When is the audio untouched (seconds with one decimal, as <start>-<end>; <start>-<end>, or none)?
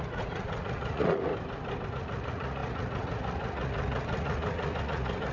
1.3-1.9